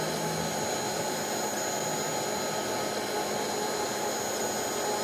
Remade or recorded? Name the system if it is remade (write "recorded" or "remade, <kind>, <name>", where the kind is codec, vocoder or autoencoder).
recorded